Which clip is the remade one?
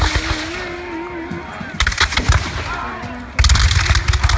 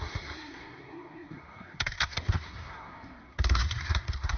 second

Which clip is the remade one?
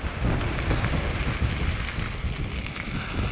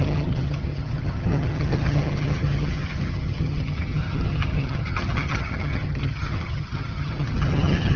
second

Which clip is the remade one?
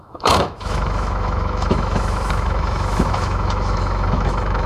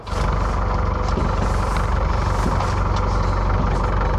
first